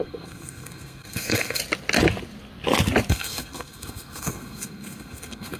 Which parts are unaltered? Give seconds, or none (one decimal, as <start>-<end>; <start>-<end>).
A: 1.6-3.1